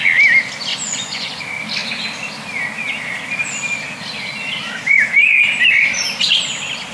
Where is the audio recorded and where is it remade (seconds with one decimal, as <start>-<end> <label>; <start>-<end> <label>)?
0.0-0.7 recorded; 0.7-1.4 remade; 1.4-6.9 recorded